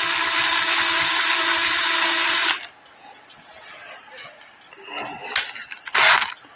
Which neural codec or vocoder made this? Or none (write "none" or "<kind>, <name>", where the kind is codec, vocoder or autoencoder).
none